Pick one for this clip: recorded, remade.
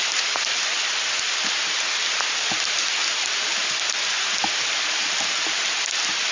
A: recorded